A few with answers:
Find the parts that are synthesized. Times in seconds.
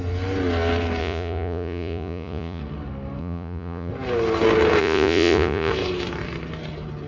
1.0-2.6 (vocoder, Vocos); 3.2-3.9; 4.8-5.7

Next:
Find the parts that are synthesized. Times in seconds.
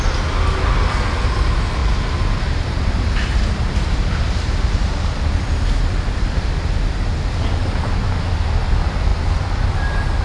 none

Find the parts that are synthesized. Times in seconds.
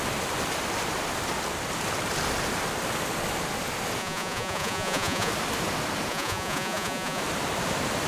4.0-5.3 (vocoder, Vocos); 6.1-7.2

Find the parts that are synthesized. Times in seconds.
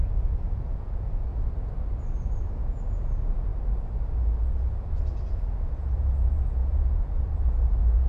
0.0-1.3 (vocoder, Vocos); 2.6-3.5; 4.2-8.1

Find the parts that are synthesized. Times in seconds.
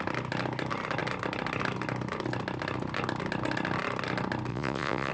4.5-5.1 (vocoder, Vocos)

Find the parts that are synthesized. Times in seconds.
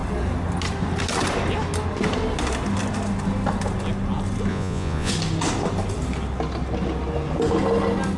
4.5-5.1 (vocoder, Vocos)